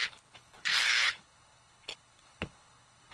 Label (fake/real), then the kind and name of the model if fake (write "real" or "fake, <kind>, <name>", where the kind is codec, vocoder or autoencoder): fake, codec, HILCodec